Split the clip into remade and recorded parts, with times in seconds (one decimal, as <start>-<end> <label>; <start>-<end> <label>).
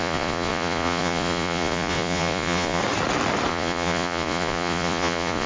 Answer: 0.0-2.8 remade; 2.8-3.5 recorded; 3.5-5.5 remade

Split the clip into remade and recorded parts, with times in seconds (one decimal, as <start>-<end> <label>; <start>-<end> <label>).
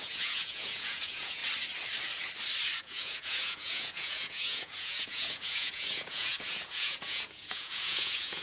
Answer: 0.0-1.4 remade; 1.4-2.8 recorded; 2.8-8.4 remade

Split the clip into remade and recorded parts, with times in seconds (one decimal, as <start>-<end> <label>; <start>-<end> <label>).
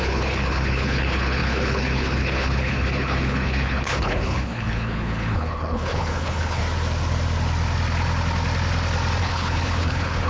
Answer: 0.0-6.6 remade; 6.6-9.2 recorded; 9.2-10.3 remade